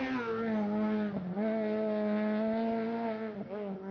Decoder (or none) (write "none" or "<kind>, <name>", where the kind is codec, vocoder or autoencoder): none